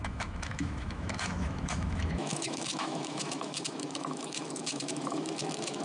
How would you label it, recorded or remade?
remade